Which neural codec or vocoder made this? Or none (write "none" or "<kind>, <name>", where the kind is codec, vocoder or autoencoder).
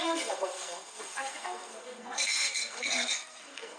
codec, SNAC